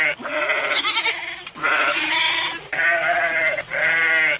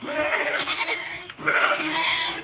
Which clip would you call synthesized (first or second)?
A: second